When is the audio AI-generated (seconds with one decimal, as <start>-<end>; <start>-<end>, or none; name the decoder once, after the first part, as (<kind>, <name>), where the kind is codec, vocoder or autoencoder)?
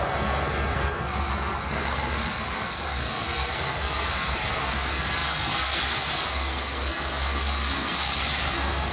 0.0-8.9 (codec, SNAC)